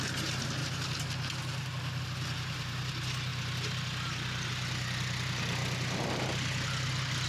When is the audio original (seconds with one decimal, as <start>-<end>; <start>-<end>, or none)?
0.0-7.3